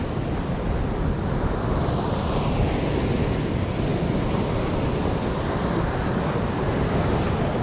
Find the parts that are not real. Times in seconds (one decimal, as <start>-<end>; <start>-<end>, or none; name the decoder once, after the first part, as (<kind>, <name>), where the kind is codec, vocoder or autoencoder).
none